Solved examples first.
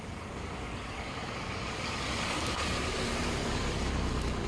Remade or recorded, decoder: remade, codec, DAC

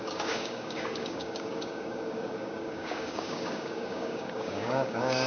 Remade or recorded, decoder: remade, codec, DAC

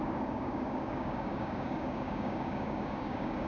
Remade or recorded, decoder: remade, codec, DAC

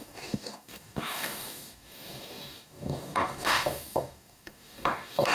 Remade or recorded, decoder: remade, codec, DAC